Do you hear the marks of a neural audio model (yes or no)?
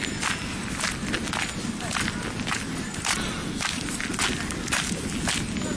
no